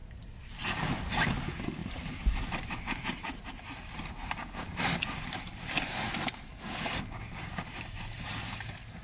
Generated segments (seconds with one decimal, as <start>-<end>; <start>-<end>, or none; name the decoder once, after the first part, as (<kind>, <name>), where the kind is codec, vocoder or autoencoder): 0.6-9.0 (vocoder, BigVGAN v2)

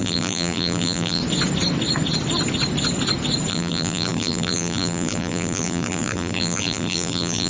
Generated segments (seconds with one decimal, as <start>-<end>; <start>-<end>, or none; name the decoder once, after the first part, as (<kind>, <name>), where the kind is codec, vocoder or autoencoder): 0.0-1.2 (vocoder, BigVGAN v2); 3.5-7.5

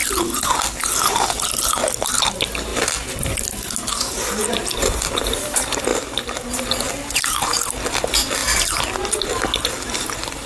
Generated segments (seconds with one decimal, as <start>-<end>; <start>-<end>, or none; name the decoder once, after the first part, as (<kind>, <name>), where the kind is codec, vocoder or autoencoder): 5.9-6.5 (vocoder, BigVGAN v2)

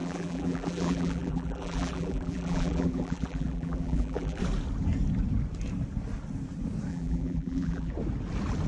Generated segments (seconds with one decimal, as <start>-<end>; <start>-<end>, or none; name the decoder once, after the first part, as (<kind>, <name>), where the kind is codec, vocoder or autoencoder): 0.0-4.4 (vocoder, BigVGAN v2); 6.9-7.9